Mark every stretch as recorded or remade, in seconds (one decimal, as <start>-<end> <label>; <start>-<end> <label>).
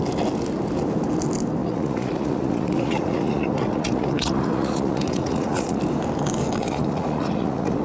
0.0-1.6 recorded; 1.6-5.8 remade; 5.8-6.6 recorded; 6.6-7.8 remade